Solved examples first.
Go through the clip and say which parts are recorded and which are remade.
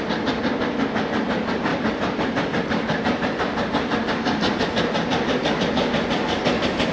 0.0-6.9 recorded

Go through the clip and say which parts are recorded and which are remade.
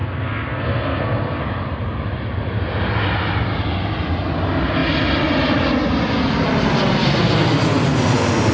0.0-1.4 remade; 1.4-8.5 recorded